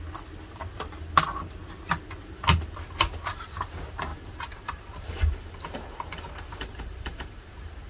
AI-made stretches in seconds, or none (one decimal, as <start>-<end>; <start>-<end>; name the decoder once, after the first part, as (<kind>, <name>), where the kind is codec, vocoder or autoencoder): 3.3-7.9 (vocoder, BigVGAN v2)